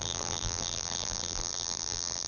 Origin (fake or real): fake